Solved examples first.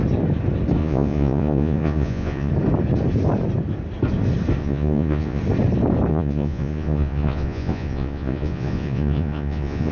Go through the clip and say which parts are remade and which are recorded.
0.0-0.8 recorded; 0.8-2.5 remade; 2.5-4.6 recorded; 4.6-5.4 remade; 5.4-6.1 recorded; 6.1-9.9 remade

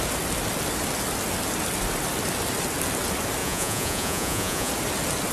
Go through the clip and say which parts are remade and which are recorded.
0.0-3.4 recorded; 3.4-4.7 remade; 4.7-5.3 recorded

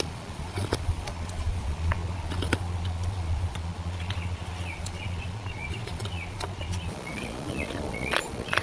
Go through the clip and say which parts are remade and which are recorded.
0.0-8.6 remade

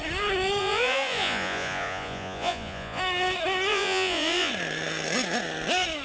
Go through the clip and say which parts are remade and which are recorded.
0.0-0.6 recorded; 0.6-3.0 remade; 3.0-3.7 recorded; 3.7-4.5 remade; 4.5-6.0 recorded